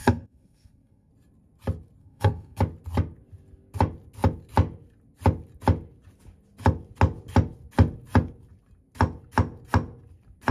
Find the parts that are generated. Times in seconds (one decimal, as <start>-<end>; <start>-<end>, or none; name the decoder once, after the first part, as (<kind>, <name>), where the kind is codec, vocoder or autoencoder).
0.0-1.1 (codec, SNAC); 2.0-2.6